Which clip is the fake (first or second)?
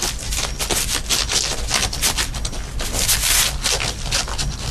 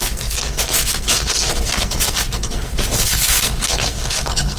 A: second